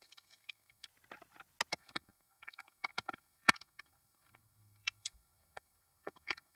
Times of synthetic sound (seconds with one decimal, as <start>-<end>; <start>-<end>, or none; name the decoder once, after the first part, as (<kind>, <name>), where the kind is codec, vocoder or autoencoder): 0.0-0.9 (codec, SNAC); 1.7-6.6